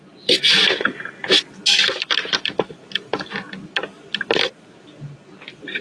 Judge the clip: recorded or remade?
recorded